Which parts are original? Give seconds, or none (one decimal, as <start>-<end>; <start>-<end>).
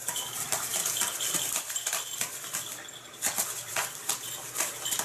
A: 0.0-5.0